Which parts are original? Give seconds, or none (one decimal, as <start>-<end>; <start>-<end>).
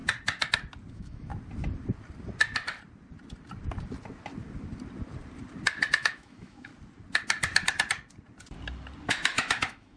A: 0.0-0.9; 1.3-5.9; 6.7-9.1